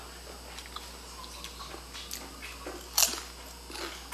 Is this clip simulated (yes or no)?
no